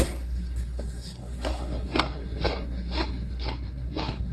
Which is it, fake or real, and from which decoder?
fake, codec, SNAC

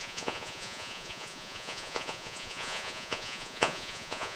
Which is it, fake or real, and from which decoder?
fake, vocoder, Vocos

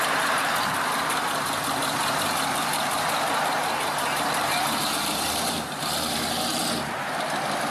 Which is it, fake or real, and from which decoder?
fake, vocoder, BigVGAN v2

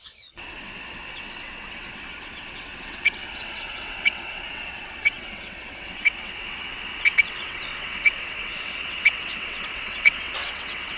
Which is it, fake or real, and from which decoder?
fake, vocoder, WaveNeXt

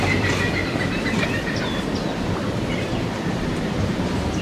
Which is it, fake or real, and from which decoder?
fake, vocoder, BigVGAN v2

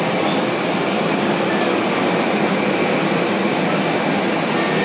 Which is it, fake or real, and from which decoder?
real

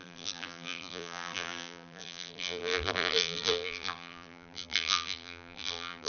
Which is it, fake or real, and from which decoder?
fake, vocoder, BigVGAN v2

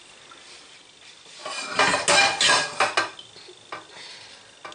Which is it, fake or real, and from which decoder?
real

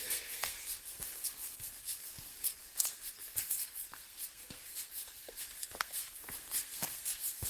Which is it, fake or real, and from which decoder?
fake, codec, SNAC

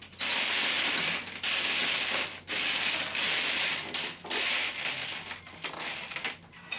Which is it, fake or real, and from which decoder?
real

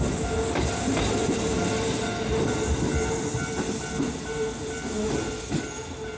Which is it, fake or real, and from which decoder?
real